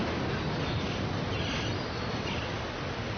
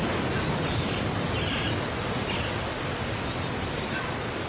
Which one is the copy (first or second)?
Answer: second